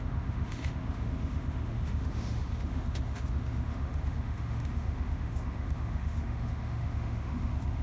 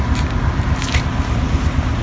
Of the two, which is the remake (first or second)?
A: first